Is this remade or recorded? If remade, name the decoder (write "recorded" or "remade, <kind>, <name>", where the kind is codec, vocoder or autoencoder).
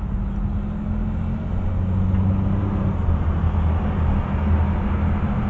recorded